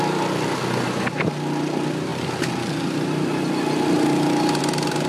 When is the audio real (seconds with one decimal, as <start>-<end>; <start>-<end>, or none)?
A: 0.0-5.1